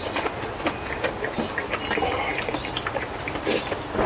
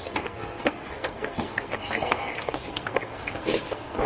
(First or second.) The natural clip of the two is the first